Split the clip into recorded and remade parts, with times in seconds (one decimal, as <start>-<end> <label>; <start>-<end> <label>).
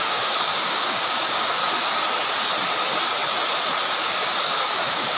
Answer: 0.0-1.6 remade; 1.6-3.9 recorded; 3.9-5.2 remade